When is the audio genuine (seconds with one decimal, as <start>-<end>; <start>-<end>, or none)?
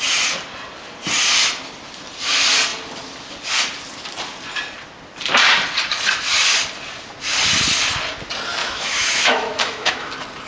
0.0-8.6; 10.1-10.5